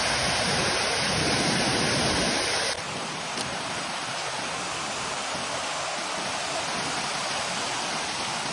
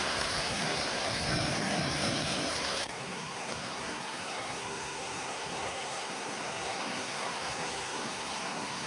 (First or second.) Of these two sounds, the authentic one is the first